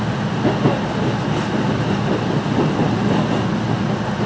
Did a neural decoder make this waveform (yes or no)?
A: no